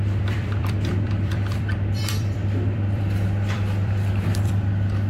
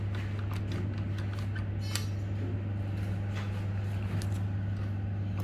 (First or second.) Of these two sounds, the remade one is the first